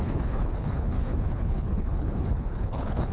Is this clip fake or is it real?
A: fake